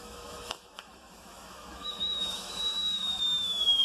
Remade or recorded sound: remade